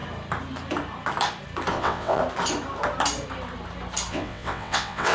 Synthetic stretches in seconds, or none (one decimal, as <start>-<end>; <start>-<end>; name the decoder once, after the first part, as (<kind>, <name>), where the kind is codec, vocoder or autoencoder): 1.7-2.2 (vocoder, WaveNeXt); 4.1-5.1